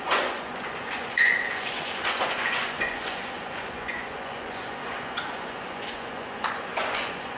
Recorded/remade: remade